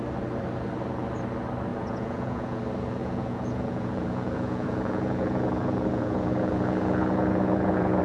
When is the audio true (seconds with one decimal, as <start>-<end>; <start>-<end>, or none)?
0.0-1.7; 2.6-3.0